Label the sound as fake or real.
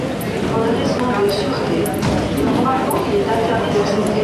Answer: real